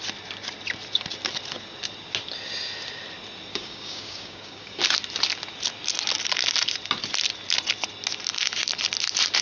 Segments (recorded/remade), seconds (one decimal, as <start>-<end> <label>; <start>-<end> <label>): 0.0-3.5 recorded; 3.5-4.8 remade; 4.8-9.4 recorded